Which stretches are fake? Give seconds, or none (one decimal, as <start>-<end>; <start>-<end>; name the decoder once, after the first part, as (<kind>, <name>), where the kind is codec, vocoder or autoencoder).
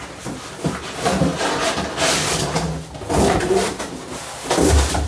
none